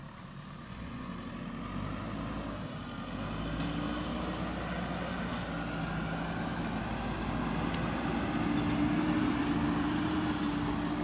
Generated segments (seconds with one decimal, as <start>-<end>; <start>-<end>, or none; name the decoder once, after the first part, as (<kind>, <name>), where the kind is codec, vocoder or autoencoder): 0.6-1.1 (vocoder, Vocos)